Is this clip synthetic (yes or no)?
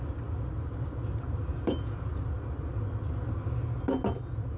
no